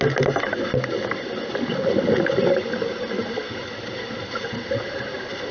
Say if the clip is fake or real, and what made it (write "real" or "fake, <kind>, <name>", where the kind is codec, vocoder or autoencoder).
real